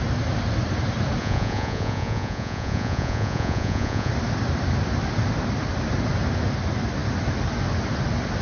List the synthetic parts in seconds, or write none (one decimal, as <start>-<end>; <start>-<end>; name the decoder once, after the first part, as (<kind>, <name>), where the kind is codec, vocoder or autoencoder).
1.2-4.1 (vocoder, Vocos)